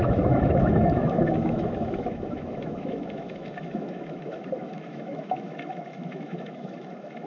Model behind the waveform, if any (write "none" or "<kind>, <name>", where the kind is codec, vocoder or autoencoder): autoencoder, DAC-VAE